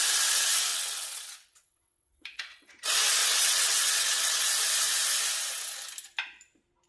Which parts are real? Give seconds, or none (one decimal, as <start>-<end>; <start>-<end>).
0.0-0.7; 2.7-3.2; 4.4-6.9

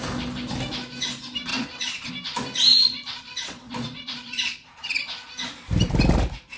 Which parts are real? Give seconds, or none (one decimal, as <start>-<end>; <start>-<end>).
0.0-1.5; 2.1-2.7; 5.0-6.6